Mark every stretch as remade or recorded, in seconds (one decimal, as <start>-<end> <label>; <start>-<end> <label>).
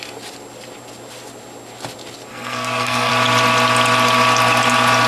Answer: 0.0-2.3 recorded; 2.3-3.1 remade; 3.1-5.1 recorded